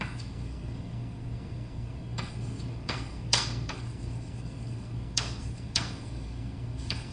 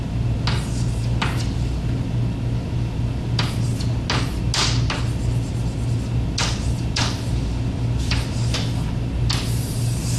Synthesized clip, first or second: first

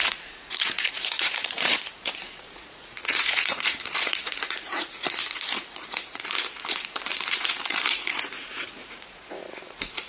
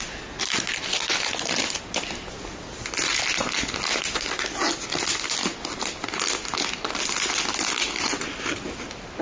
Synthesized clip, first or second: first